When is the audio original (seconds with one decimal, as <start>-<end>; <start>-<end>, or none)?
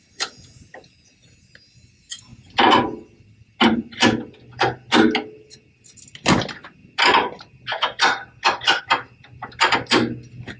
0.0-10.6